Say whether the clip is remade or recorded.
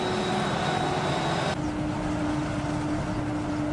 recorded